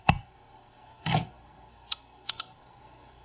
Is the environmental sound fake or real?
fake